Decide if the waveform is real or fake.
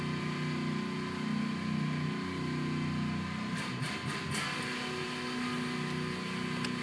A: real